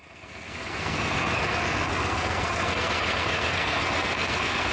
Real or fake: fake